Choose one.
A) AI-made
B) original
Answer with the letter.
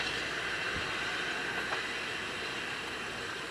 B